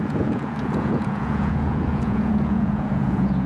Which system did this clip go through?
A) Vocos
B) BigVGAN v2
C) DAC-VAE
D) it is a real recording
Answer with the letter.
A